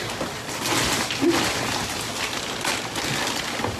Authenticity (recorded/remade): recorded